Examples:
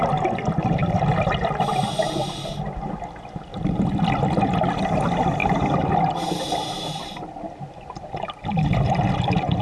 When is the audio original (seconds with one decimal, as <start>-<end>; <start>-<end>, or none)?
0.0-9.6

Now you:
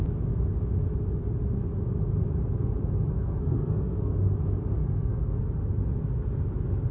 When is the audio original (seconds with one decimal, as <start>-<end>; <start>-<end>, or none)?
0.0-3.1; 4.1-4.8; 5.4-6.9

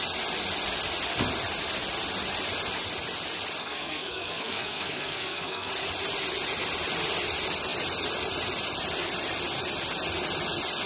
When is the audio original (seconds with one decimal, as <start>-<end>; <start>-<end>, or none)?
0.0-3.6; 5.7-10.9